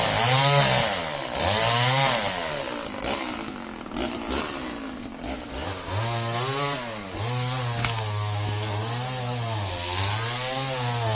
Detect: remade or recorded recorded